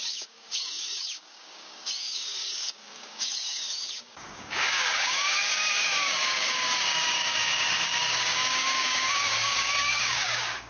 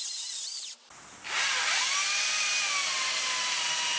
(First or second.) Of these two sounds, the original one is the second